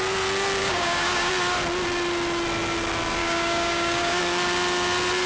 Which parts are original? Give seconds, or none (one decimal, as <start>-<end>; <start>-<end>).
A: 0.0-0.6; 1.3-3.2; 4.2-5.3